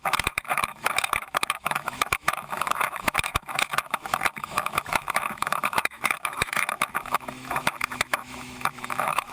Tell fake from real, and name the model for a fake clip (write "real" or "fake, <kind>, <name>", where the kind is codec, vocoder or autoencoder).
fake, autoencoder, DAC-VAE